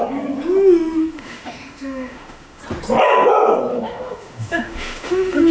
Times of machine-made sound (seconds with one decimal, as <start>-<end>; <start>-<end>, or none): 1.0-2.6; 3.7-5.5